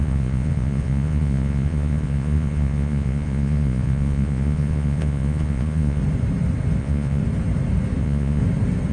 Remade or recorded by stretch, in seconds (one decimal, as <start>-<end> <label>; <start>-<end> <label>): 0.0-6.0 remade; 6.0-6.8 recorded; 6.8-7.2 remade; 7.2-8.0 recorded; 8.0-8.4 remade; 8.4-8.9 recorded